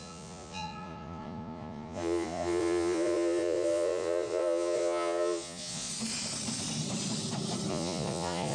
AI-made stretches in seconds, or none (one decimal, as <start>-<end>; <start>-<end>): 0.0-5.9; 7.7-8.5